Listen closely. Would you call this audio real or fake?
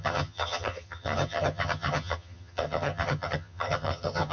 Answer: fake